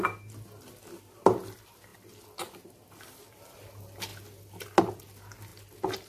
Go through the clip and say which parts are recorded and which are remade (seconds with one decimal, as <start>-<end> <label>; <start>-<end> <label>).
0.0-1.9 recorded; 1.9-3.6 remade; 3.6-6.1 recorded